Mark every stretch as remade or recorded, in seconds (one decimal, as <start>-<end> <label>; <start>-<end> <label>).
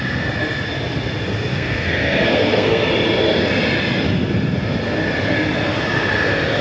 0.0-1.5 recorded; 1.5-2.9 remade; 2.9-6.6 recorded